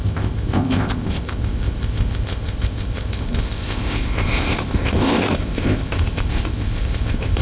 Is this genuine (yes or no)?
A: no